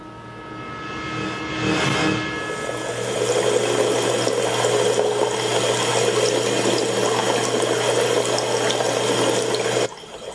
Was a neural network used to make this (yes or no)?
no